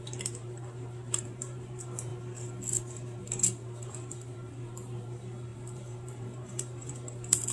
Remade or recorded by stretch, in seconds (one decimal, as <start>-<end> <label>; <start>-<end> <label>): 0.0-2.1 remade; 2.1-3.2 recorded; 3.2-7.5 remade